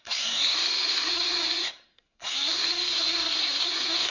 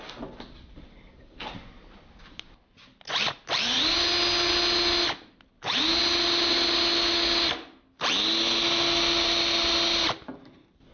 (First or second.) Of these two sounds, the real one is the second